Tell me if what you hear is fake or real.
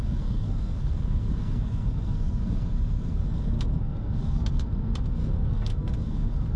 fake